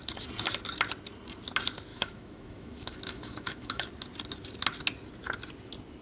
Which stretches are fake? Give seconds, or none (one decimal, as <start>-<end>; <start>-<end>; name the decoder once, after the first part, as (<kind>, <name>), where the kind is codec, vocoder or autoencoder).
1.9-3.9 (autoencoder, DAC-VAE)

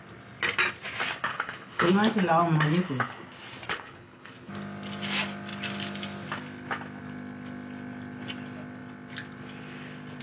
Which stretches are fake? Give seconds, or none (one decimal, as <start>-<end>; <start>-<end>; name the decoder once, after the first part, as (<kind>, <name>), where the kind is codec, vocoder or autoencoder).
1.3-1.9 (codec, HILCodec); 3.7-4.5

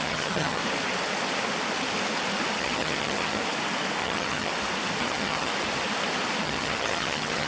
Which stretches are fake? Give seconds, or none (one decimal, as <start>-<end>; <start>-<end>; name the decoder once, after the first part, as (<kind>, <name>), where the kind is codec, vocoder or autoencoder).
0.0-0.6 (vocoder, HiFi-GAN); 2.6-3.4; 4.0-4.5; 5.0-5.5; 6.4-7.5